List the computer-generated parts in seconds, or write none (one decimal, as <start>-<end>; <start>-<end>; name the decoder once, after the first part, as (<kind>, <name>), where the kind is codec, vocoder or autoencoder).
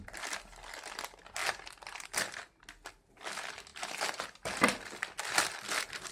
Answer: none